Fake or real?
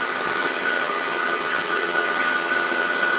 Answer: fake